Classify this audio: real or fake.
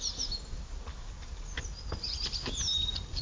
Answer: real